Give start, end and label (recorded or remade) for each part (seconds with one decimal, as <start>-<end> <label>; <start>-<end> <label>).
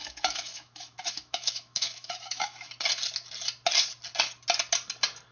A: 0.0-2.7 remade; 2.7-5.3 recorded